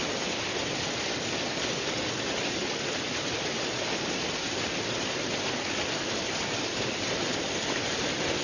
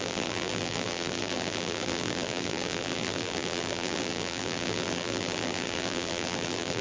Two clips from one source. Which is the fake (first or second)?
second